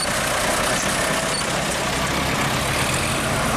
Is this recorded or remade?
recorded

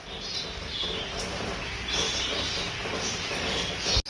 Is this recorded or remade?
recorded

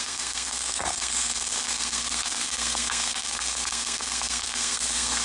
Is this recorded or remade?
remade